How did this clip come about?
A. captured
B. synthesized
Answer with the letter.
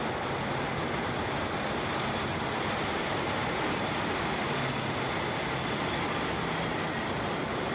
A